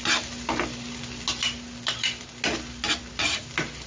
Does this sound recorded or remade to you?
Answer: recorded